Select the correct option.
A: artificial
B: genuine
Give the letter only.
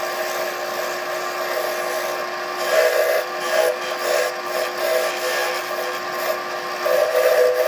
B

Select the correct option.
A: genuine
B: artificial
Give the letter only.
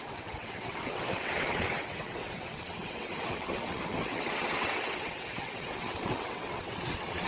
B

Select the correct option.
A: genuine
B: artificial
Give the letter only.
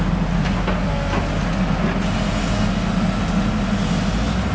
A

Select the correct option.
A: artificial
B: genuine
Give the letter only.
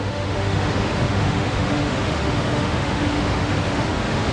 A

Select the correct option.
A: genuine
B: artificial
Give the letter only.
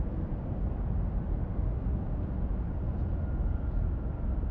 A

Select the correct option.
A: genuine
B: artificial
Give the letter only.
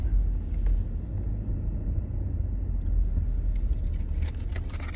A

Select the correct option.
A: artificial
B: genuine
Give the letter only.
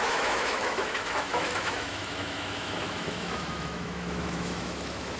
A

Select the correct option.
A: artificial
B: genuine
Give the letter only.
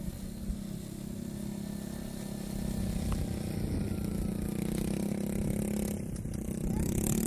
B